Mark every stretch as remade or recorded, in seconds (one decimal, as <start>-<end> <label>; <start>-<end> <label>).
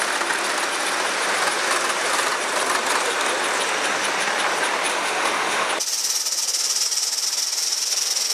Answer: 0.0-4.9 recorded; 4.9-5.7 remade; 5.7-8.3 recorded